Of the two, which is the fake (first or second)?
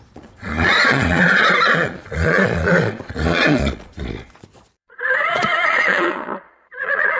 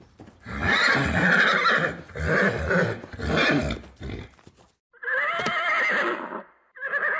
first